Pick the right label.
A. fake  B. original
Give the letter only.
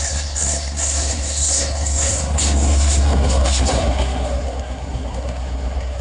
A